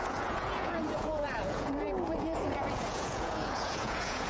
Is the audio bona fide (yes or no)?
no